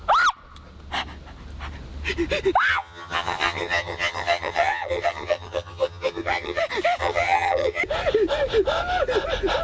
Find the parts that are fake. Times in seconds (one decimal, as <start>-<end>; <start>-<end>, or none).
2.7-6.6; 7.0-7.8